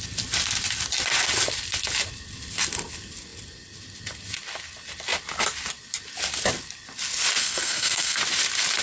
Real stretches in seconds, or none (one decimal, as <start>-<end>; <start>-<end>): 0.0-7.4; 8.2-8.8